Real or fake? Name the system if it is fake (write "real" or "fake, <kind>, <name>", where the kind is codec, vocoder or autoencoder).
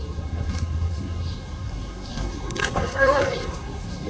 fake, codec, SNAC